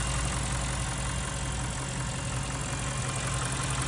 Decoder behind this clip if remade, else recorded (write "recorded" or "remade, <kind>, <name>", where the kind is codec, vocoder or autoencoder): recorded